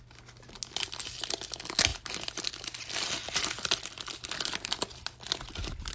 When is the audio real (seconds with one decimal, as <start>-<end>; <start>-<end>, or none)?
0.0-5.9